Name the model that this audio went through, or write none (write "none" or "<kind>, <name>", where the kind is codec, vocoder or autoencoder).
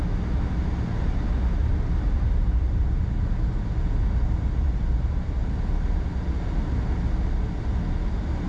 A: none